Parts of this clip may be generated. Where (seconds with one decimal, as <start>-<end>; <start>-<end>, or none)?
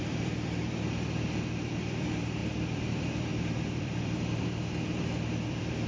0.0-5.9